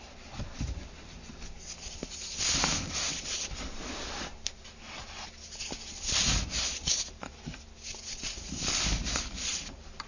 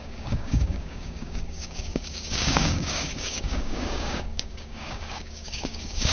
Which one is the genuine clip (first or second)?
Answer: first